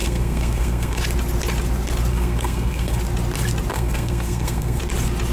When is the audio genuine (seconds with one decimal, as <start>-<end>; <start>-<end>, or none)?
1.0-2.1; 3.0-3.7; 4.8-5.3